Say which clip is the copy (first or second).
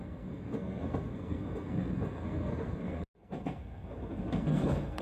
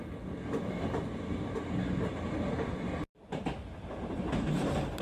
first